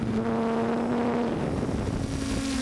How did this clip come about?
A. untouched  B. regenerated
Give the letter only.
A